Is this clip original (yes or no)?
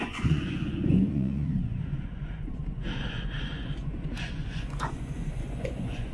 no